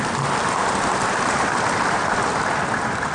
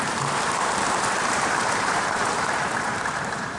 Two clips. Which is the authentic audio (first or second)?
first